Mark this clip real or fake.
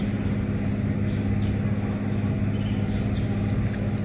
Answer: real